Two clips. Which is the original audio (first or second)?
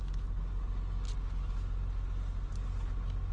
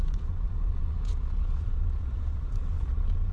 first